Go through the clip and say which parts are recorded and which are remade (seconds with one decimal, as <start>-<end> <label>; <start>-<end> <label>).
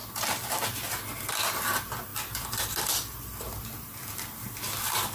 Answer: 0.0-5.1 recorded